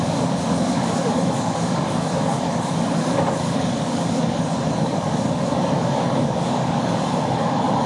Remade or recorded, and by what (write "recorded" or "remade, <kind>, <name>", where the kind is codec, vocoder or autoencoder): remade, codec, DAC